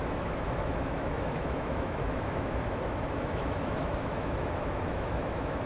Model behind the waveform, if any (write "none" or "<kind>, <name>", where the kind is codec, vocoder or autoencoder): autoencoder, DAC-VAE